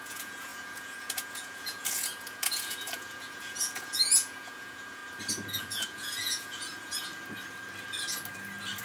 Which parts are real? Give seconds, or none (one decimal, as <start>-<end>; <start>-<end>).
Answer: 5.0-5.6; 7.1-8.8